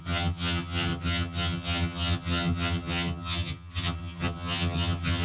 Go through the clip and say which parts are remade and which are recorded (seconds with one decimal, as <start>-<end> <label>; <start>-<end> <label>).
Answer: 0.0-5.2 remade